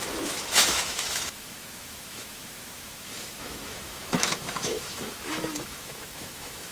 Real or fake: fake